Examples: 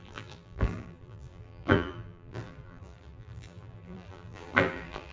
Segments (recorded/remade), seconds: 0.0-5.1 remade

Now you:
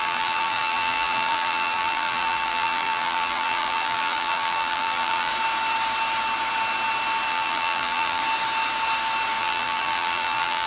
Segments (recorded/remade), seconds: 0.0-5.3 remade; 5.3-7.3 recorded; 7.3-8.2 remade; 8.2-9.4 recorded; 9.4-10.7 remade

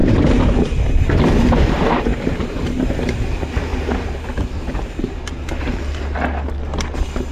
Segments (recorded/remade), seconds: 0.0-2.1 recorded; 2.1-2.9 remade; 2.9-3.7 recorded; 3.7-5.8 remade; 5.8-7.3 recorded